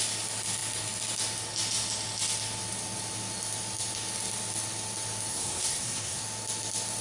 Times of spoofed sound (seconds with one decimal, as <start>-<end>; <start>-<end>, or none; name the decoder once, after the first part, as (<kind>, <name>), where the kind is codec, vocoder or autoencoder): 5.3-6.2 (codec, SNAC)